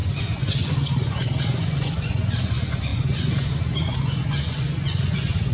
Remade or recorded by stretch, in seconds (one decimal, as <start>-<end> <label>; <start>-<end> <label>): 0.0-5.5 remade